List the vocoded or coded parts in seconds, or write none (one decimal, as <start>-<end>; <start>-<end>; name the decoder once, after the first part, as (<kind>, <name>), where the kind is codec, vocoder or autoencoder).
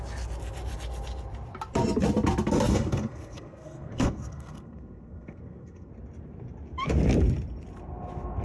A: 2.7-5.9 (codec, SNAC)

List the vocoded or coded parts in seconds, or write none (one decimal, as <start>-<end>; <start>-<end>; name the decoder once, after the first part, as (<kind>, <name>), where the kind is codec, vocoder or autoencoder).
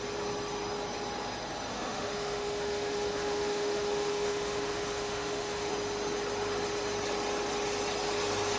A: 1.7-5.7 (autoencoder, DAC-VAE)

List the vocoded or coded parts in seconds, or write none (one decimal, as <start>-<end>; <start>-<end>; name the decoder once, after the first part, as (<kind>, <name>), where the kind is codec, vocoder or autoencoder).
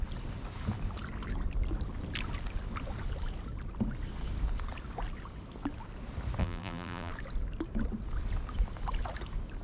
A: 6.4-7.1 (vocoder, BigVGAN v2)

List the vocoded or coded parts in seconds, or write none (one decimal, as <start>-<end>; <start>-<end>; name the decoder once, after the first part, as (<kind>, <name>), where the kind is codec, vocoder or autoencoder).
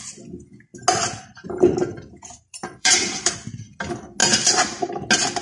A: 1.9-3.3 (vocoder, BigVGAN v2); 4.2-4.9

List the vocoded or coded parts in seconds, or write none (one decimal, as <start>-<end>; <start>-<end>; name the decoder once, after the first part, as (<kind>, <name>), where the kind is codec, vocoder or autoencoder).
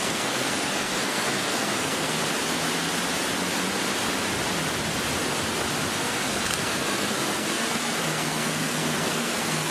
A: 0.0-2.2 (codec, SNAC); 5.9-9.7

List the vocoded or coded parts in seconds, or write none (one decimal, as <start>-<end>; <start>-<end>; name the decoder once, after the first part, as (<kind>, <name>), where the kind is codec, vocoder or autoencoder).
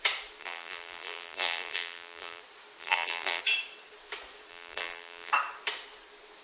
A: 0.4-2.4 (vocoder, BigVGAN v2); 2.8-3.4; 4.5-5.3